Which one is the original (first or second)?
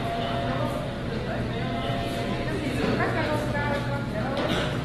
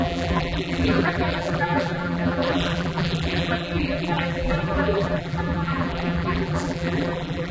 first